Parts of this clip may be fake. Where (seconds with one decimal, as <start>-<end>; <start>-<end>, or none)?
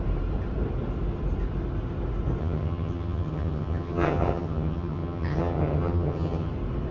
2.4-6.5